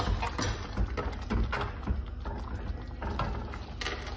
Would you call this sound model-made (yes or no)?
no